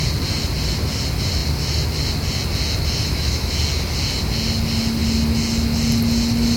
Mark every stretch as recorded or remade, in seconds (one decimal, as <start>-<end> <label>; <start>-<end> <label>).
0.0-3.0 recorded; 3.0-3.6 remade; 3.6-6.6 recorded